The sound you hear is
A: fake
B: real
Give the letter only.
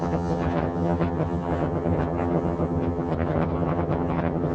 A